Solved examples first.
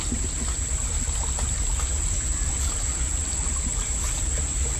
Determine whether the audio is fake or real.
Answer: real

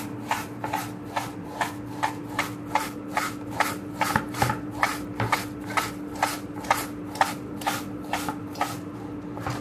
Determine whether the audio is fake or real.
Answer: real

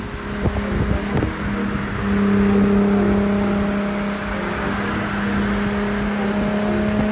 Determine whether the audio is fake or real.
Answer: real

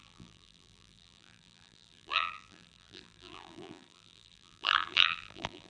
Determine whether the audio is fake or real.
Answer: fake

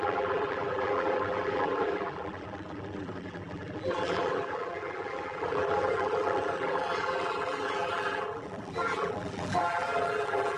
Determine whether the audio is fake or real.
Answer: fake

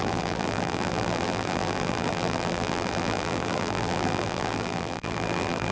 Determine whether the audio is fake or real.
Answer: fake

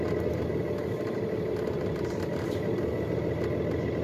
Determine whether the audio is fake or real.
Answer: real